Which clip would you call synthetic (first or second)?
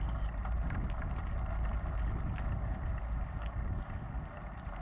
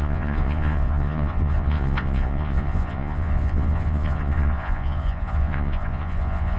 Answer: second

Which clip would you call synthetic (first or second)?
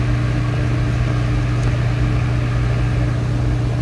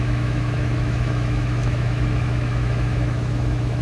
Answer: second